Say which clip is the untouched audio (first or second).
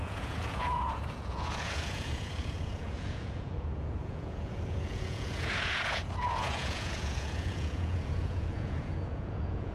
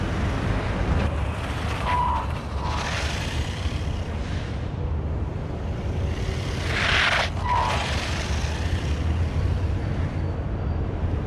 second